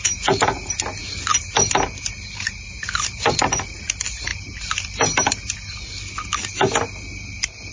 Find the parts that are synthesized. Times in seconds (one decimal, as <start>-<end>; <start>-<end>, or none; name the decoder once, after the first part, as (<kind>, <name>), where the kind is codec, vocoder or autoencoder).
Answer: none